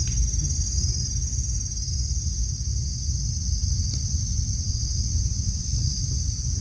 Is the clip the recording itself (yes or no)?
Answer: yes